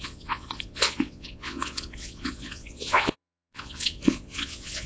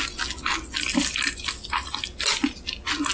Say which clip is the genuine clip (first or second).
second